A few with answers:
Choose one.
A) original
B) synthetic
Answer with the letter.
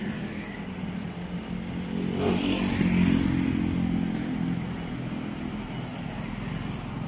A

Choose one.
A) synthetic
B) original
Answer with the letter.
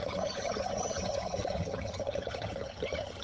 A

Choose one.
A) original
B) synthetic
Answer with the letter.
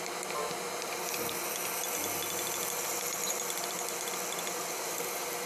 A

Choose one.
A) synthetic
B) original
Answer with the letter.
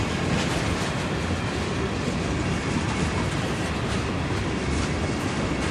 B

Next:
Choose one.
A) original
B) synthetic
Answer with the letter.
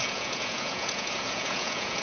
B